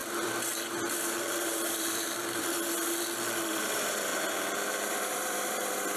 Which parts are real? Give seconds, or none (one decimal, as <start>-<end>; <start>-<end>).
4.1-4.7